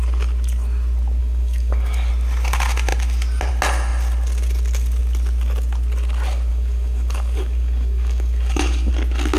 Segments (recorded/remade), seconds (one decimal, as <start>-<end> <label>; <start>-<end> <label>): 0.0-1.2 recorded; 1.2-2.1 remade; 2.1-6.5 recorded; 6.5-8.9 remade; 8.9-9.4 recorded